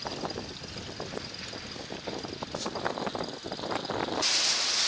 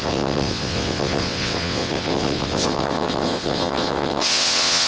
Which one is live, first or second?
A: first